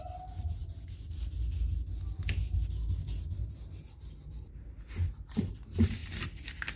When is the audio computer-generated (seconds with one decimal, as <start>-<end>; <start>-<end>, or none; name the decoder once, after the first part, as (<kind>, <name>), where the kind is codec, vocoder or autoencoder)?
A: none